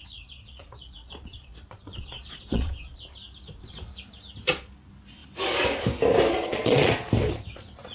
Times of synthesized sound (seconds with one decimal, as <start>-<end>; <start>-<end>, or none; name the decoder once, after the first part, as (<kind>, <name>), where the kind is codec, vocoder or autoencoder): 0.0-3.0 (vocoder, Vocos); 6.4-6.9